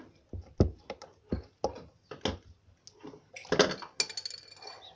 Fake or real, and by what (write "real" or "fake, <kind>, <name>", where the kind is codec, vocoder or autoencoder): real